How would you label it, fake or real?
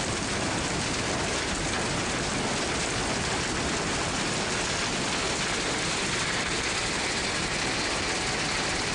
real